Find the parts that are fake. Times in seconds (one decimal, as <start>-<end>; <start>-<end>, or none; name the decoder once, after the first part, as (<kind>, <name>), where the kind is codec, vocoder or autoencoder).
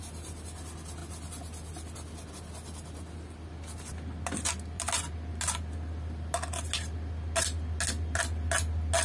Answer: none